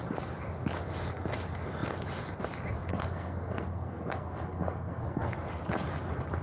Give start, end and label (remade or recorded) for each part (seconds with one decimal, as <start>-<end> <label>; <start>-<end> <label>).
0.0-2.9 recorded; 2.9-5.3 remade; 5.3-6.4 recorded